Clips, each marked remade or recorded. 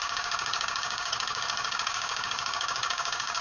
remade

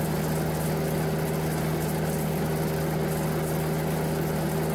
recorded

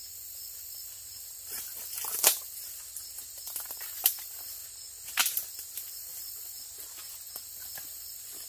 recorded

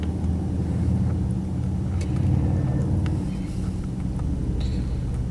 recorded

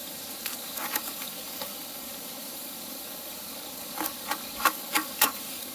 remade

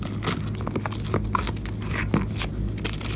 recorded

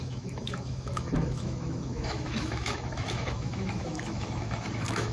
remade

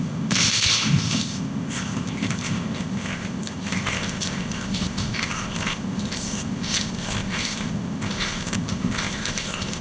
remade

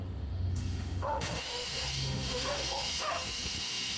remade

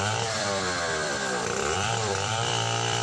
remade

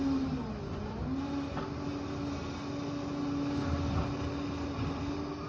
recorded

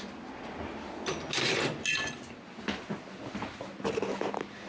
recorded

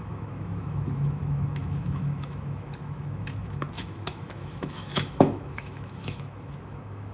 remade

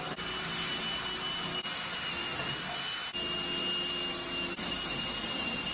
recorded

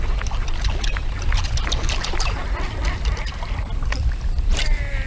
recorded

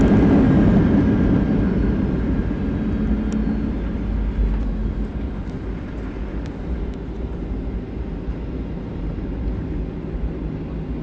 recorded